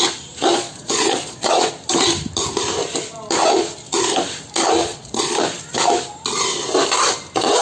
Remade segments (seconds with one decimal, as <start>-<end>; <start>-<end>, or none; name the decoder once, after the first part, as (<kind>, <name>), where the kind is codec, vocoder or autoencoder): 0.5-1.7 (vocoder, Vocos); 4.8-5.4